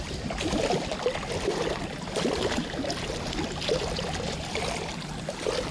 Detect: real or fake real